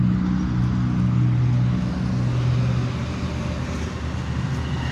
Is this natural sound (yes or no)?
yes